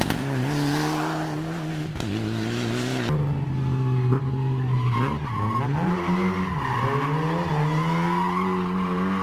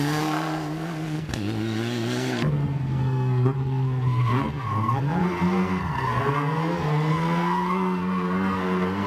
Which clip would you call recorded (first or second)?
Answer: first